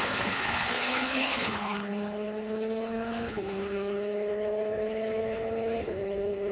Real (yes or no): no